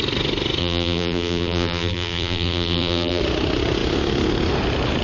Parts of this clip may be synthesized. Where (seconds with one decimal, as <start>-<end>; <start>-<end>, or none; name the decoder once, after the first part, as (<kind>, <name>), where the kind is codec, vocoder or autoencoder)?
0.6-3.2 (vocoder, BigVGAN v2)